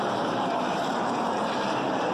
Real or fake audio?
fake